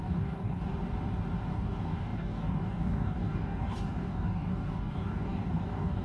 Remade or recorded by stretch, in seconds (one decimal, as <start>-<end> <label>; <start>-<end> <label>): 0.0-0.7 remade; 0.7-1.5 recorded; 1.5-6.0 remade